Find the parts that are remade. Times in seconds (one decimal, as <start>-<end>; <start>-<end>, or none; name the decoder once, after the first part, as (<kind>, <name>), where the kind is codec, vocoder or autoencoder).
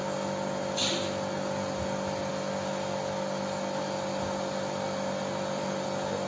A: none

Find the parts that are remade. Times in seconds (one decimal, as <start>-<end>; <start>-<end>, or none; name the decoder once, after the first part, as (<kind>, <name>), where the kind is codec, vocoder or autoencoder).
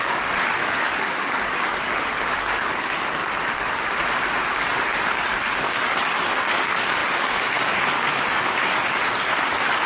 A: 0.0-3.2 (codec, DAC); 5.1-9.0; 9.5-9.9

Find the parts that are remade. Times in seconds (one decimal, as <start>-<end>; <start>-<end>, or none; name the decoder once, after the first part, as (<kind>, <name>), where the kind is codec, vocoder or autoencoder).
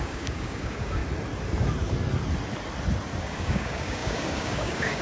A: 0.0-1.0 (codec, DAC); 3.2-5.0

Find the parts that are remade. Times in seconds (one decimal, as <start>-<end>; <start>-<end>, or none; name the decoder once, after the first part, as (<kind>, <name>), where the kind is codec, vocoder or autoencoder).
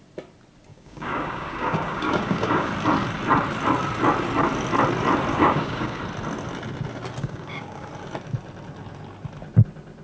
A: 0.7-2.7 (codec, DAC); 5.3-6.0; 7.2-7.9